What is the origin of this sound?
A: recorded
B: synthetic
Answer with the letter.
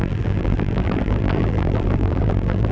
B